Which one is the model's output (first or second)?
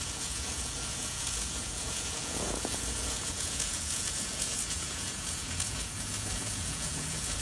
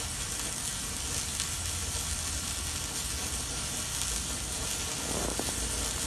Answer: first